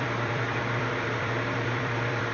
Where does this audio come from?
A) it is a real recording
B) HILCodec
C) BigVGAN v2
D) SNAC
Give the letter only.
C